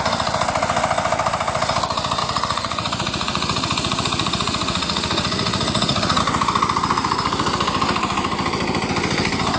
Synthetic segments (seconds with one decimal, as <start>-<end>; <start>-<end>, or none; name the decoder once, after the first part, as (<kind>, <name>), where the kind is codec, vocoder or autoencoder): 2.2-6.2 (vocoder, Vocos)